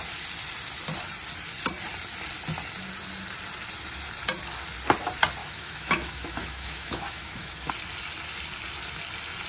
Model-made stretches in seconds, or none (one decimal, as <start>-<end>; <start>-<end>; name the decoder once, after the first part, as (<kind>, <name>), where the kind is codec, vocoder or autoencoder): 5.4-7.7 (autoencoder, DAC-VAE)